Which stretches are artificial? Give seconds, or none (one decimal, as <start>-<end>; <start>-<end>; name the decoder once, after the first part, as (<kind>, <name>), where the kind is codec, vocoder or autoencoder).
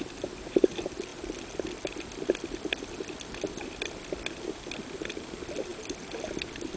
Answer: none